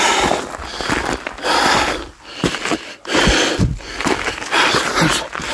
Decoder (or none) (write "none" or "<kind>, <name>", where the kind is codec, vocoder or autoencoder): none